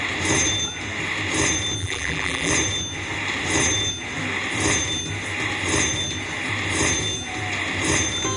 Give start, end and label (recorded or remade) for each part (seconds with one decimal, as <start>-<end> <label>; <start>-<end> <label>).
0.0-1.8 recorded; 1.8-2.5 remade; 2.5-8.4 recorded